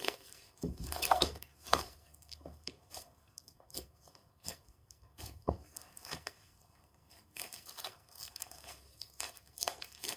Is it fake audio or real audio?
fake